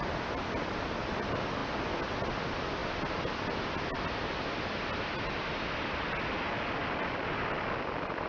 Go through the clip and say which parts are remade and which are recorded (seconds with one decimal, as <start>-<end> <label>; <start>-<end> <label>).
0.0-8.3 recorded